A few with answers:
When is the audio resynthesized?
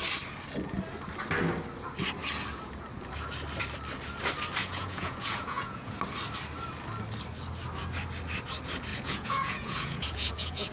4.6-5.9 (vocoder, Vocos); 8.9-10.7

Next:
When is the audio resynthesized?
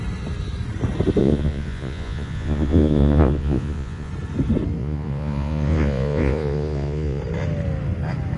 1.2-4.1 (vocoder, Vocos); 4.8-7.2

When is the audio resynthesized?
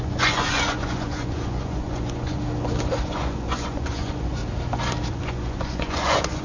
0.0-2.4 (vocoder, Vocos); 3.0-4.4; 5.1-6.4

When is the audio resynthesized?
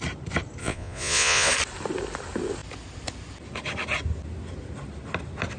0.6-1.5 (vocoder, Vocos)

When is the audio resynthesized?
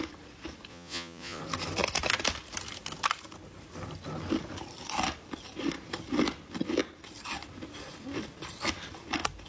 0.7-1.4 (vocoder, Vocos)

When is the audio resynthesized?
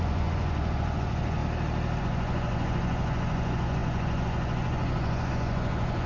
0.0-1.4 (vocoder, Vocos); 2.0-6.1